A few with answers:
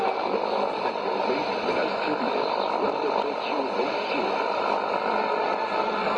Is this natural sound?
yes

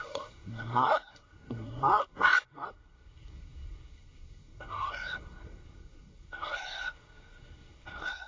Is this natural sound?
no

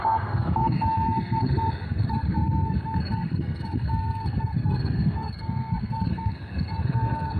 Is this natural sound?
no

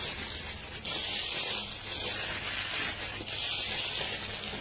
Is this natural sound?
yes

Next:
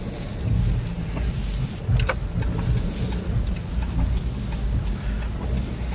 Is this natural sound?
yes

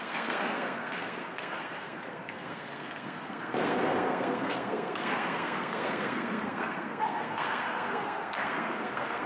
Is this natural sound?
no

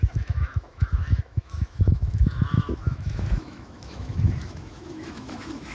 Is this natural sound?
no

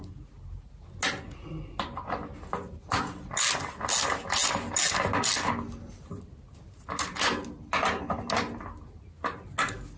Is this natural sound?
yes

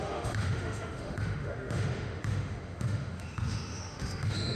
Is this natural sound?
no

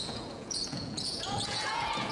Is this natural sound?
no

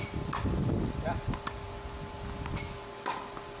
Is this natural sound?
yes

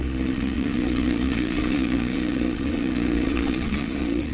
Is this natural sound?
no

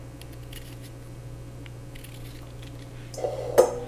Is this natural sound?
yes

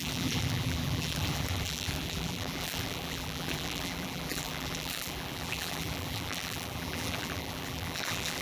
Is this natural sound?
no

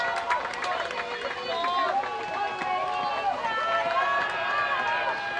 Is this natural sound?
yes